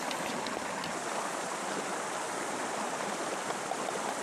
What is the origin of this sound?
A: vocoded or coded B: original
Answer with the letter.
B